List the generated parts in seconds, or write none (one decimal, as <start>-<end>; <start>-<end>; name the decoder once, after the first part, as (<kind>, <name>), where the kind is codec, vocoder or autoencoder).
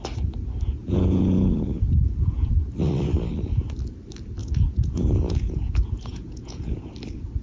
0.8-2.5 (vocoder, Vocos); 4.4-6.8